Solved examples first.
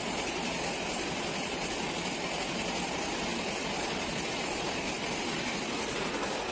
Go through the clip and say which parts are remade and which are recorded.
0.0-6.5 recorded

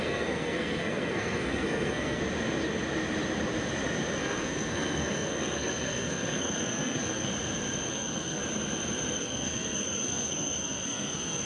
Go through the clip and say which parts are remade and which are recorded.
0.0-2.2 remade; 2.2-4.2 recorded; 4.2-7.3 remade; 7.3-7.9 recorded; 7.9-8.4 remade; 8.4-9.2 recorded; 9.2-11.5 remade

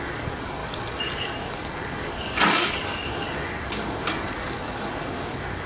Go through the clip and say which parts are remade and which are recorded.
0.0-5.7 remade

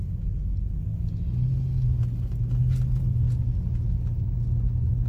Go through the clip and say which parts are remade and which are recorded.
0.0-5.1 recorded

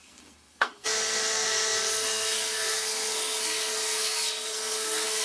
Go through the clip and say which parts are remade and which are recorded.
0.0-5.2 remade

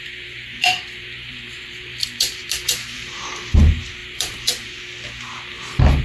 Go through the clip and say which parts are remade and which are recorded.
0.0-3.6 remade; 3.6-4.0 recorded; 4.0-4.8 remade; 4.8-6.0 recorded

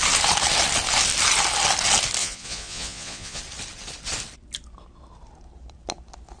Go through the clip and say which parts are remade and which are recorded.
0.0-2.2 recorded; 2.2-3.4 remade; 3.4-6.4 recorded

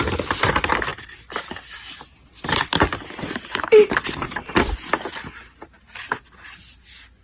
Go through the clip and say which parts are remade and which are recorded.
0.0-7.2 recorded